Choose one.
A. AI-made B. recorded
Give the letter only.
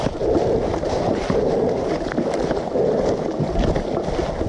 B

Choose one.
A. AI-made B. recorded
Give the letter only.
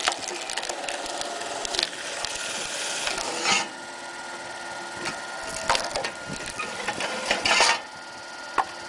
B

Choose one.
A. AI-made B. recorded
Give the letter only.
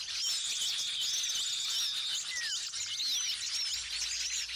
B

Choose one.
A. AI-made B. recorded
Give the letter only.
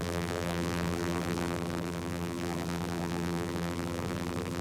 A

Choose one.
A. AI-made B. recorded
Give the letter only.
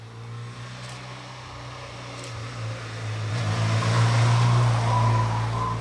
B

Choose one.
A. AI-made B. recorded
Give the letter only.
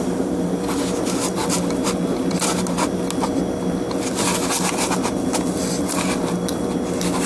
B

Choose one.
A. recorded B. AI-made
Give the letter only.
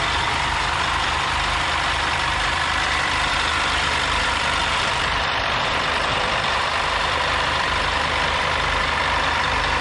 B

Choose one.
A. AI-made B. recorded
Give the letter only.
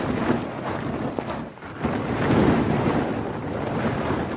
B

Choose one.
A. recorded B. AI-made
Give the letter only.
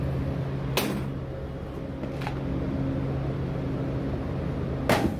A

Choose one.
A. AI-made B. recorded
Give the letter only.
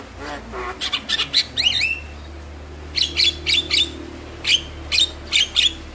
B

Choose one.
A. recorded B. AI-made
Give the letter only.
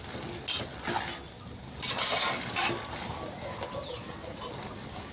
A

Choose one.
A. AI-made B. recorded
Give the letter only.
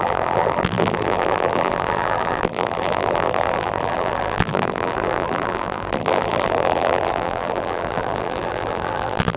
A